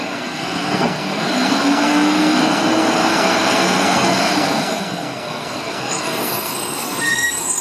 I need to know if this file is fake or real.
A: fake